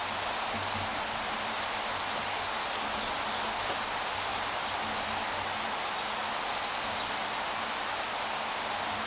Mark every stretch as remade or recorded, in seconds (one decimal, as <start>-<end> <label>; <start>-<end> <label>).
0.0-9.1 recorded